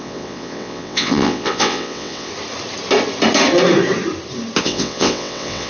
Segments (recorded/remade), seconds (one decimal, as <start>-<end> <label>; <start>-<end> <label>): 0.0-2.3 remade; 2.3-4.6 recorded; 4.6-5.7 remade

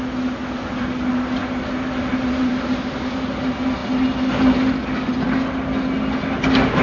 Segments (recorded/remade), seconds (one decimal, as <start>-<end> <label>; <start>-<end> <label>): 0.0-6.8 recorded

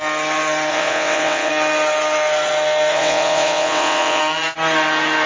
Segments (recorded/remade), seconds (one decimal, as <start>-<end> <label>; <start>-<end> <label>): 0.0-0.7 recorded; 0.7-1.5 remade; 1.5-2.9 recorded; 2.9-4.2 remade; 4.2-5.3 recorded

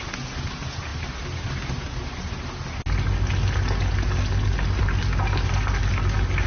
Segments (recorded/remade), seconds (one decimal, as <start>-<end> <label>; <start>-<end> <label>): 0.0-6.5 recorded

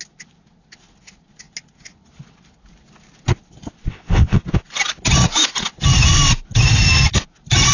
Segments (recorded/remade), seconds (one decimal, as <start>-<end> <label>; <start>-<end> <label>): 0.0-3.9 recorded; 3.9-4.4 remade; 4.4-7.7 recorded

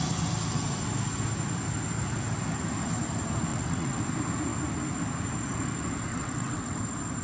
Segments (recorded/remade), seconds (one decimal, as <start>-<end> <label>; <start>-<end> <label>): 0.0-3.5 recorded; 3.5-4.0 remade; 4.0-6.1 recorded; 6.1-6.8 remade; 6.8-7.2 recorded

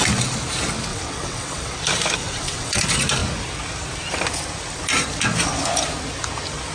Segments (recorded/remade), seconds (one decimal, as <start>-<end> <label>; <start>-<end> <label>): 0.0-0.9 recorded; 0.9-1.8 remade; 1.8-2.2 recorded; 2.2-2.8 remade; 2.8-6.7 recorded

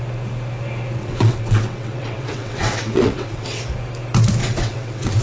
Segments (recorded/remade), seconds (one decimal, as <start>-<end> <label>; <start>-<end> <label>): 0.0-1.0 recorded; 1.0-3.6 remade; 3.6-4.4 recorded; 4.4-5.2 remade